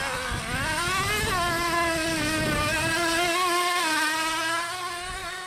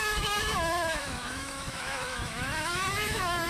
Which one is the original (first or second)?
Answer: first